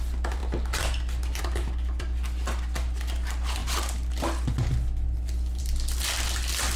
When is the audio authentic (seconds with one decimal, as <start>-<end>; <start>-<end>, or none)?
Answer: 0.0-6.8